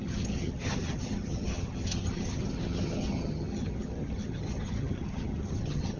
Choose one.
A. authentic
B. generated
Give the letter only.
B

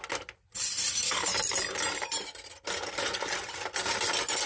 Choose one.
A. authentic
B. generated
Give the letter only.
A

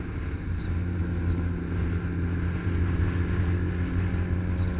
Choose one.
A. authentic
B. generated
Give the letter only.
A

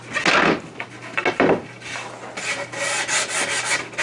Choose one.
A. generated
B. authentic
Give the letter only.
B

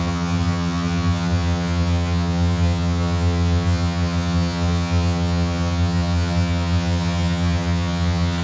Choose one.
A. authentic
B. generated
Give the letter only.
B